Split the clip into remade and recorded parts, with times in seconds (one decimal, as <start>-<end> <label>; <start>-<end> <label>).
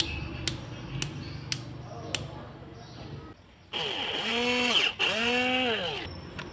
0.0-6.5 recorded